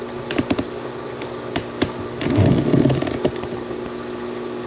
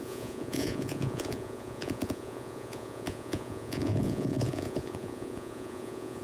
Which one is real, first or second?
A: first